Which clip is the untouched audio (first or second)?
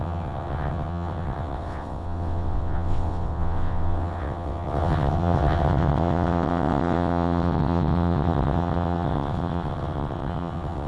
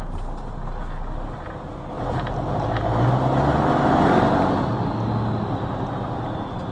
second